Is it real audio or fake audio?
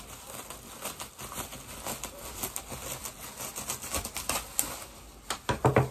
real